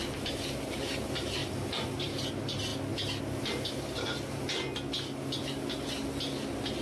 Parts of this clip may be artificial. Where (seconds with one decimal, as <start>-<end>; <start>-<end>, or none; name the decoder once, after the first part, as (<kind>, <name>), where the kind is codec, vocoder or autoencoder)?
1.4-2.3 (vocoder, BigVGAN v2)